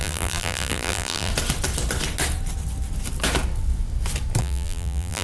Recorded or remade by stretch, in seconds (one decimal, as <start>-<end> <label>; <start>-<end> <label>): 0.0-1.3 remade; 1.3-4.4 recorded; 4.4-5.2 remade